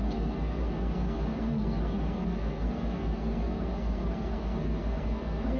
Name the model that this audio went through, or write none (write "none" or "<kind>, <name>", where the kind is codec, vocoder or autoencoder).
codec, SNAC